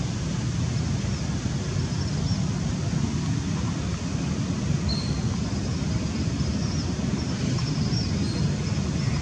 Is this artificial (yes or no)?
no